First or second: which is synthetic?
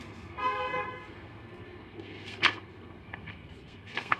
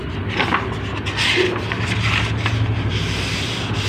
first